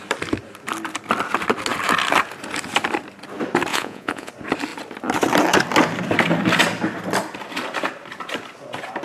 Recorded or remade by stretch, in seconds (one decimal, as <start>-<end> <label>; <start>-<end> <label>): 0.0-3.7 recorded; 3.7-4.3 remade; 4.3-9.0 recorded